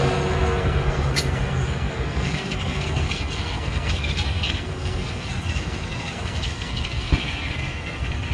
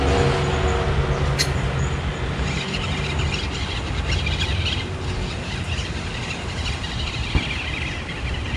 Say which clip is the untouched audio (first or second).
second